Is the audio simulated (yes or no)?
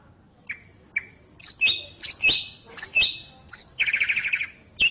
no